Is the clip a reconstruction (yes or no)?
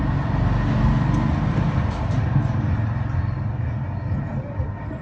no